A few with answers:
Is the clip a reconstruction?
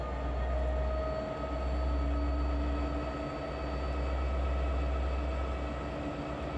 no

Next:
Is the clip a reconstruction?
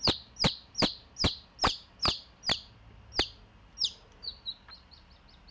no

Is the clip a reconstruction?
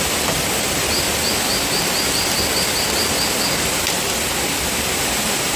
no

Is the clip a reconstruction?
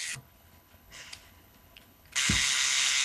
yes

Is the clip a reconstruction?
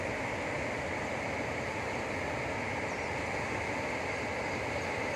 no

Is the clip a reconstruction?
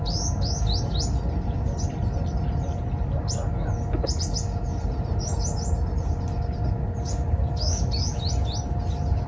no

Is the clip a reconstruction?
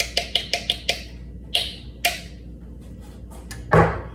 no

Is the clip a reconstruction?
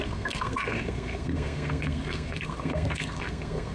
yes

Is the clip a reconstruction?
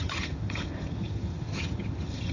yes